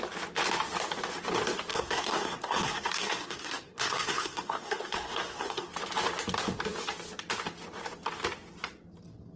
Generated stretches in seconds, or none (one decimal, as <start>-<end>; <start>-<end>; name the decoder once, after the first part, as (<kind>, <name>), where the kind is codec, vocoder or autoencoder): 1.7-5.7 (codec, SNAC)